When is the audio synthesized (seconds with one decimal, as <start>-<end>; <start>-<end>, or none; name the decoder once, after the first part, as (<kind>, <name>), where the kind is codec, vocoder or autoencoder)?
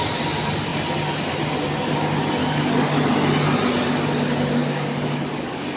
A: 2.4-3.1 (codec, DAC); 4.6-5.8